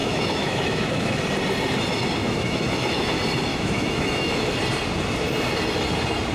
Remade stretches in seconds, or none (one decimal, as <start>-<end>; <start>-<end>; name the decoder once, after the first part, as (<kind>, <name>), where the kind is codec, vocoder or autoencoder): 0.0-1.2 (autoencoder, DAC-VAE); 2.2-3.1; 3.5-4.5